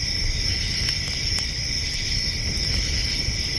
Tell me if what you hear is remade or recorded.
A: recorded